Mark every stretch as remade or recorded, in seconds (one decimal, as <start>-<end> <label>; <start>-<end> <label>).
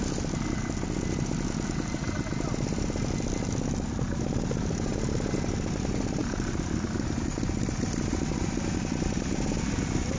0.0-6.2 recorded; 6.2-6.7 remade; 6.7-10.2 recorded